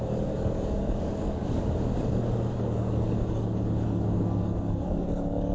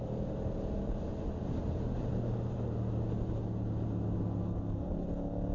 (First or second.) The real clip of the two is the second